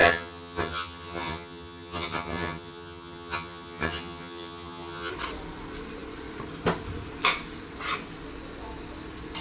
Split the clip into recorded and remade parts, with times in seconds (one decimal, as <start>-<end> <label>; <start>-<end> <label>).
0.0-5.1 remade; 5.1-9.4 recorded